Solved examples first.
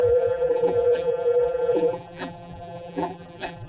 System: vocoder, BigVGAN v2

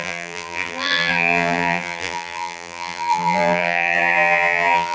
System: vocoder, BigVGAN v2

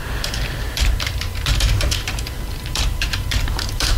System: vocoder, BigVGAN v2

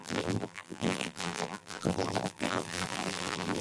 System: vocoder, BigVGAN v2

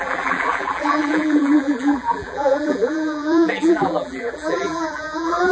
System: vocoder, BigVGAN v2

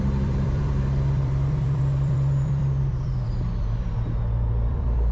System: vocoder, BigVGAN v2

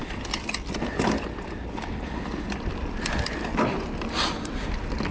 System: none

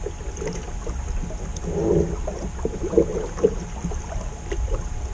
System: none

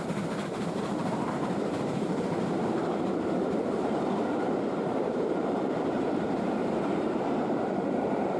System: vocoder, BigVGAN v2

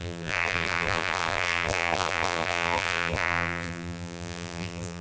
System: vocoder, BigVGAN v2